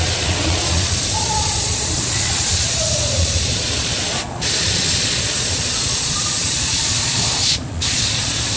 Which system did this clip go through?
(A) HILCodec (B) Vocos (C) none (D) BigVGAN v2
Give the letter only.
B